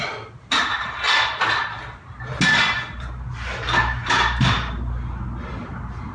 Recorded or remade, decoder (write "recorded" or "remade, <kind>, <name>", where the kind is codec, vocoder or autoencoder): recorded